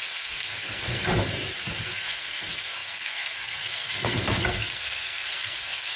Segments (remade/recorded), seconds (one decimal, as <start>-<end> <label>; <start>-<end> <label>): 0.0-1.1 remade; 1.1-1.8 recorded; 1.8-6.0 remade